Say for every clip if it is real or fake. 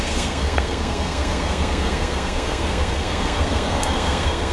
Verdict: fake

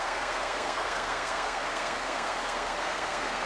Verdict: fake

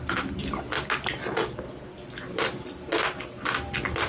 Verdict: real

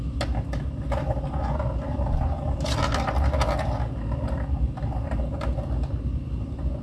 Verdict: real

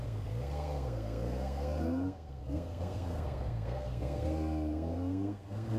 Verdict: fake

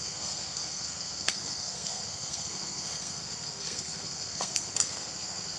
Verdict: fake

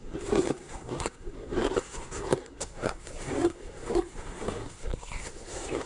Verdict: fake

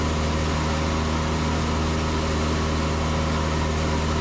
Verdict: real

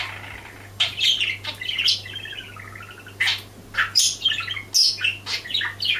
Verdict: real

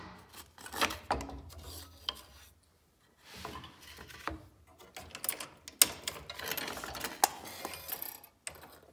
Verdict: real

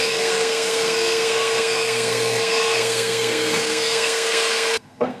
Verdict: fake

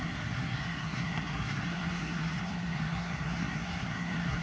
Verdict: fake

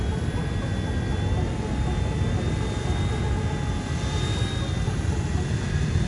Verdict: real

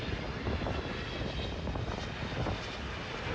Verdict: real